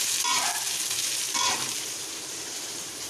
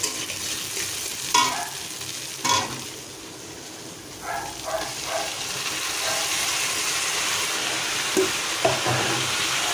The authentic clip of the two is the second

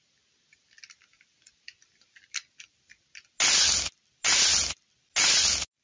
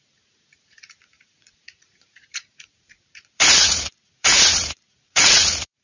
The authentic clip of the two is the first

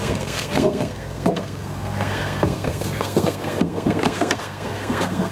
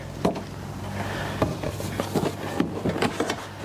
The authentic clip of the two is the second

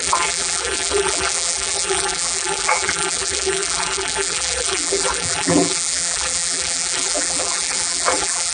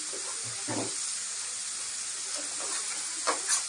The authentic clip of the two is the second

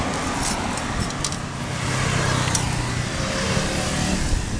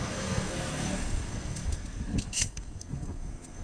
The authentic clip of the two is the first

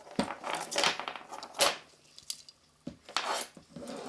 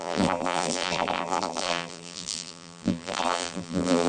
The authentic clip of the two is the first